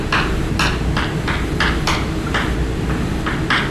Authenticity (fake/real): real